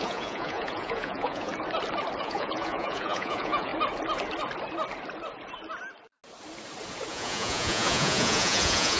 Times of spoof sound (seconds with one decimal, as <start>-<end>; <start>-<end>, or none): 0.0-1.5; 2.2-3.7; 7.1-9.0